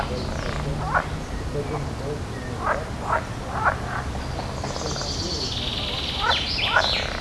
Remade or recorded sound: recorded